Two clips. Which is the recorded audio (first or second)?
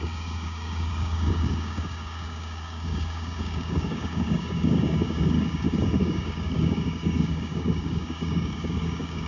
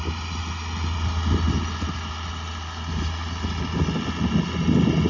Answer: second